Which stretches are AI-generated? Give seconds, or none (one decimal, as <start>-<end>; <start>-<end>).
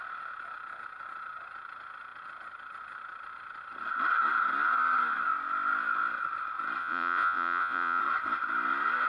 6.8-8.0